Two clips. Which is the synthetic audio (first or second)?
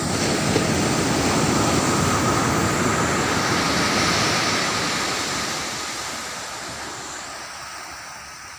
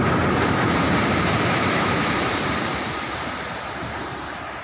second